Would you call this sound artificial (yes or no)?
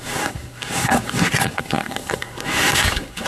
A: yes